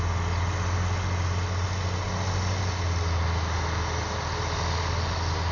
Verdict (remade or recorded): recorded